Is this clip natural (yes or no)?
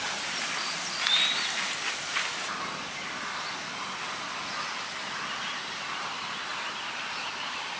no